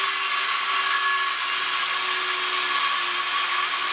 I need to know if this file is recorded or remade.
recorded